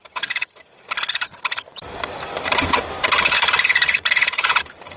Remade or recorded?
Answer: remade